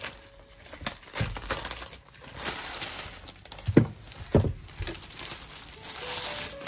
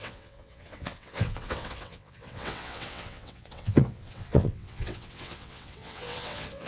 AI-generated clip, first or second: second